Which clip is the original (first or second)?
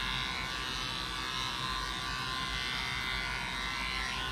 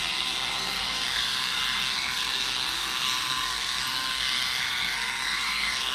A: first